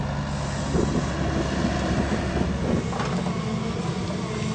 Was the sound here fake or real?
real